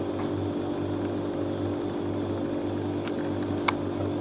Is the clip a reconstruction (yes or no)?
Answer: no